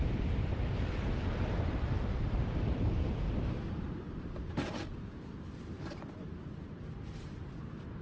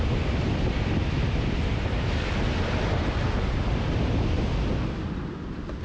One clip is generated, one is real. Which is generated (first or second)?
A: first